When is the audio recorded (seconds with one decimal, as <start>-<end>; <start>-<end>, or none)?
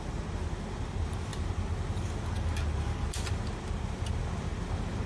0.0-5.1